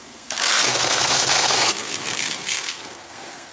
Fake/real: fake